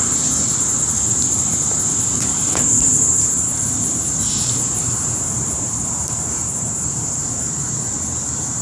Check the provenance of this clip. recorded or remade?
remade